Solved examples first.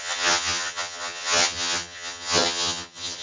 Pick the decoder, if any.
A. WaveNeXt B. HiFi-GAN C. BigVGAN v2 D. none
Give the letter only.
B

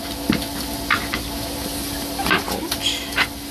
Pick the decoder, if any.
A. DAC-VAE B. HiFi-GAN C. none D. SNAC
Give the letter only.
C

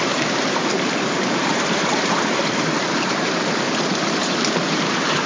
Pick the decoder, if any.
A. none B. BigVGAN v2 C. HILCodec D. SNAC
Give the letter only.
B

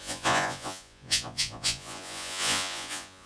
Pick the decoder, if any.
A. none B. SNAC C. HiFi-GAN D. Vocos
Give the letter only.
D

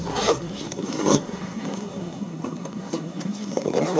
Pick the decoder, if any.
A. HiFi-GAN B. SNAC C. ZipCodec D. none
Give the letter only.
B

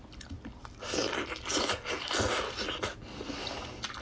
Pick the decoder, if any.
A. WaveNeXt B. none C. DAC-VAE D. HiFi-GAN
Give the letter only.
B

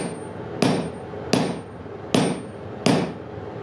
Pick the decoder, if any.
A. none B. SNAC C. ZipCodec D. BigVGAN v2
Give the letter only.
A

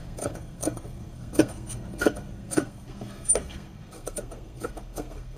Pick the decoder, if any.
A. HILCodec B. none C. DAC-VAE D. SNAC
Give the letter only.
D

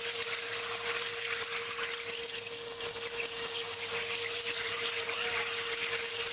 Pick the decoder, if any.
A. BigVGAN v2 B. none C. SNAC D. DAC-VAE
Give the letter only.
B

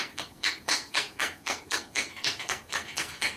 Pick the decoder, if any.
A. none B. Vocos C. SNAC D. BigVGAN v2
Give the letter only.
C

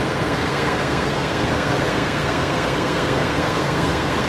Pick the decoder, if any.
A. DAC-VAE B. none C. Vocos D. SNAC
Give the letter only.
D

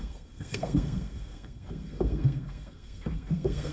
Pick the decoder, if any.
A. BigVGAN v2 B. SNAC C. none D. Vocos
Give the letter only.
B